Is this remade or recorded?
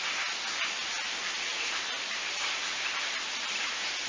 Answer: recorded